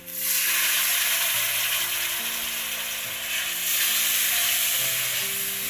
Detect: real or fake real